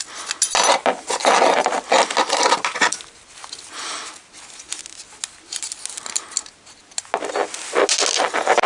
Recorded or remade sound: recorded